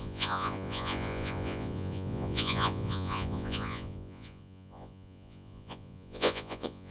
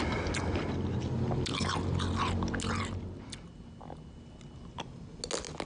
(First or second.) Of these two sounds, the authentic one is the second